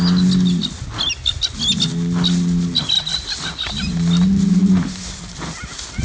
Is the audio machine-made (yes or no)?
no